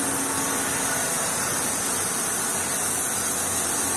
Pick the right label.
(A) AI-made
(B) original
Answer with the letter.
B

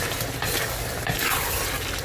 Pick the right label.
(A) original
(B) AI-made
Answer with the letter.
B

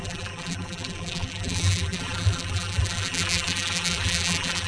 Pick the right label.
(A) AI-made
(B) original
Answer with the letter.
A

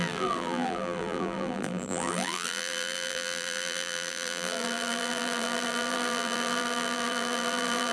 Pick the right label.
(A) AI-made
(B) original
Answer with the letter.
A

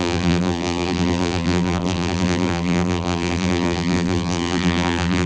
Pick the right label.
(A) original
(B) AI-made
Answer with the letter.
B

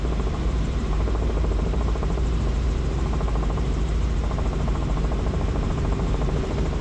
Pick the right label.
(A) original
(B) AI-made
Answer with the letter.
B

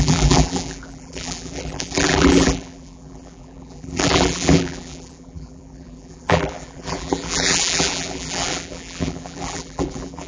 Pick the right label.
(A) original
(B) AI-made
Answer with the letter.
B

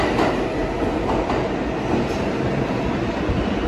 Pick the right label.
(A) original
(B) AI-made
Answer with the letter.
A